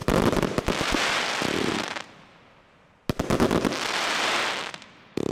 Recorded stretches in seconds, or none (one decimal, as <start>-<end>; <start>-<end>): 0.0-5.3